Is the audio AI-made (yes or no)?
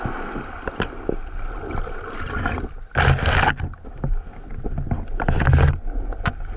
no